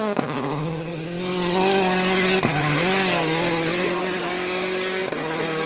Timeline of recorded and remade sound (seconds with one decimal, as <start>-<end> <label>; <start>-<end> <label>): 0.0-0.9 remade; 0.9-4.3 recorded; 4.3-5.0 remade; 5.0-5.7 recorded